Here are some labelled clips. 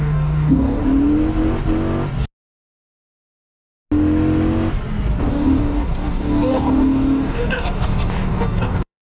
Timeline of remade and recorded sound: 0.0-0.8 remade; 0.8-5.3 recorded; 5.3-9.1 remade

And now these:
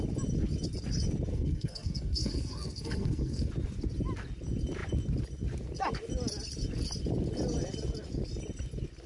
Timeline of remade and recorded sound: 0.0-1.3 recorded; 1.3-3.5 remade; 3.5-9.1 recorded